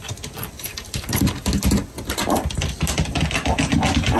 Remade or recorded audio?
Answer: recorded